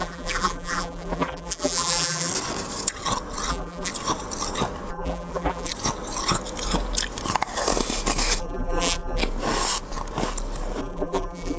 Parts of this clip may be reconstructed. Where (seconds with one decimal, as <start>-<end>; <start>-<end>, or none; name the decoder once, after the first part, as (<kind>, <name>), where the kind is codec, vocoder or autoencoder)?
0.0-2.3 (vocoder, BigVGAN v2); 3.5-3.9; 4.9-5.7; 8.4-9.2; 10.8-11.6